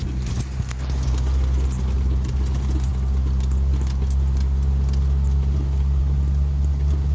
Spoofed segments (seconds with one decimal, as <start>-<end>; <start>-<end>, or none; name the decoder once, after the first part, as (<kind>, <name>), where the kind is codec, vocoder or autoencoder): none